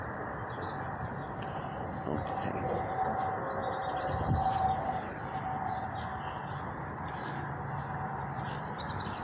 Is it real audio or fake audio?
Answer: real